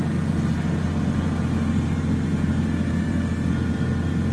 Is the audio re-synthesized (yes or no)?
no